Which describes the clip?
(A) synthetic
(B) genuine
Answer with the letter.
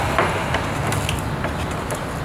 B